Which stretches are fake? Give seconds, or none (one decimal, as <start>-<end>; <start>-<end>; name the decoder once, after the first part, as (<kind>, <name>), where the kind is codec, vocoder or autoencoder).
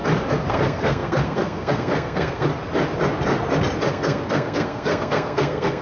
0.5-2.5 (codec, SNAC); 3.9-5.8